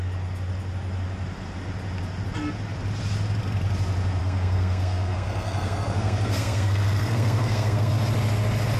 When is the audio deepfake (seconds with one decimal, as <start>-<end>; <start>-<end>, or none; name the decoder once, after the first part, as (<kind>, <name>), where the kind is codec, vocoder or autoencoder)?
4.2-7.9 (codec, SNAC)